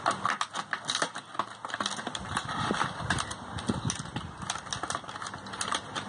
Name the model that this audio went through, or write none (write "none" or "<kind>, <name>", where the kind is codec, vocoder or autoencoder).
none